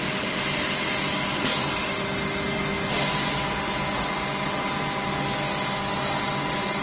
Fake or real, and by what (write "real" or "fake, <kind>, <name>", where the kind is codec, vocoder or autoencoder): real